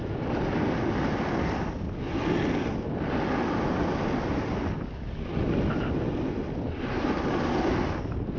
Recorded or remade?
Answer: recorded